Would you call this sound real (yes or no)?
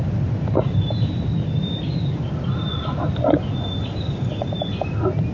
yes